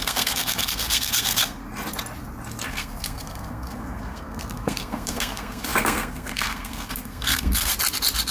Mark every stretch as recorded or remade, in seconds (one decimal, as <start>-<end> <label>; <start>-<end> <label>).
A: 0.0-1.6 remade; 1.6-2.7 recorded; 2.7-7.7 remade; 7.7-8.3 recorded